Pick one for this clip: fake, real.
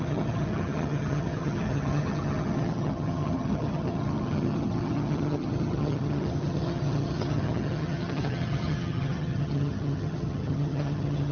fake